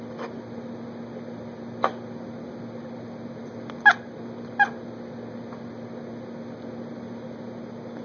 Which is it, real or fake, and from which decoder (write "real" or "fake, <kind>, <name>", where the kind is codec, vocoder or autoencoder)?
real